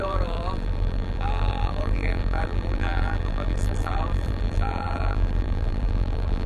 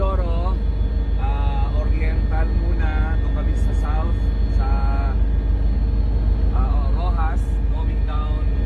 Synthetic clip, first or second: first